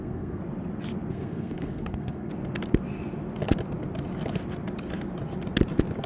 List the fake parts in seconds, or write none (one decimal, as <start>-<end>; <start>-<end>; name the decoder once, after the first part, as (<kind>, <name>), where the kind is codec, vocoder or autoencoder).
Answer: 0.0-0.4 (codec, SNAC); 1.1-2.3